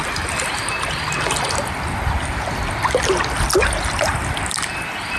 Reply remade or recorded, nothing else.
recorded